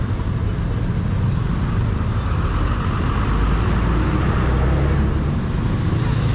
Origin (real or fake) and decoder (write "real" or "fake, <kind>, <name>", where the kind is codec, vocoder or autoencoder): real